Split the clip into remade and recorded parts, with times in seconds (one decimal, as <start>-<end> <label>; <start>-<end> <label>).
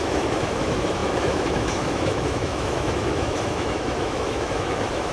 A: 0.0-5.1 remade